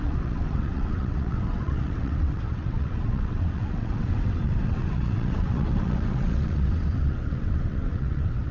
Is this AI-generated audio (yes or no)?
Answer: yes